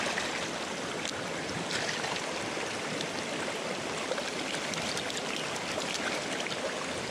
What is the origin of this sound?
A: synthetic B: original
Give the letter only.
B